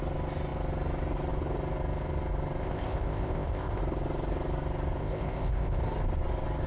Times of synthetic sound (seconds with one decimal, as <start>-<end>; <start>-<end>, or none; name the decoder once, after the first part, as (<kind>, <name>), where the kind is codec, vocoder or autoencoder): 2.6-3.8 (codec, ZipCodec); 5.0-5.8